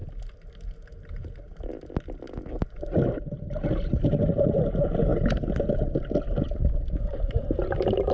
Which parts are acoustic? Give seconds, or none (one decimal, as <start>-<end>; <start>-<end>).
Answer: 0.0-8.1